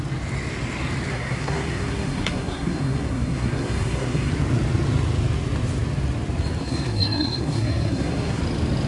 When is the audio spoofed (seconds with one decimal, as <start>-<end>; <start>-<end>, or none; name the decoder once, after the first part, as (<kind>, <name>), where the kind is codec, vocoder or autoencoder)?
1.1-4.3 (codec, SNAC); 6.6-8.4

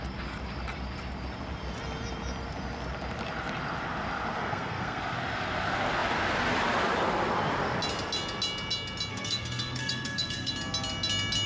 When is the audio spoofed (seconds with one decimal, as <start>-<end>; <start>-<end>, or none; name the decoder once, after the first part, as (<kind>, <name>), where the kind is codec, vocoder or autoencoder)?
4.4-5.0 (codec, SNAC); 9.1-10.5